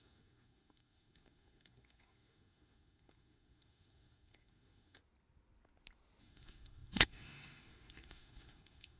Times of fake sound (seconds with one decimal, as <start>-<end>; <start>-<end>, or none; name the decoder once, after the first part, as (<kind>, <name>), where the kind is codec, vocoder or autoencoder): 0.0-5.0 (codec, SNAC); 6.2-9.0